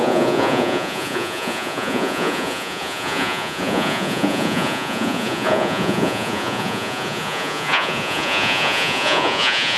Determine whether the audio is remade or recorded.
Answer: remade